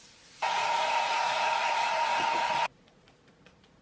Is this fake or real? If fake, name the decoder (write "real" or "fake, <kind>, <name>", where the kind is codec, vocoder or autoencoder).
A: fake, vocoder, Vocos